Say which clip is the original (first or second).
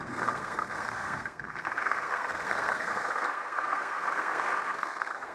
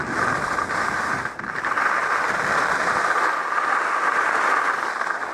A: second